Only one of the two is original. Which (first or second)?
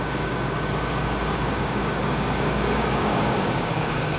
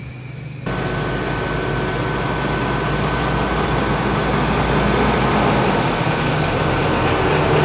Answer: second